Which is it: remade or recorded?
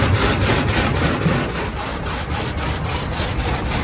remade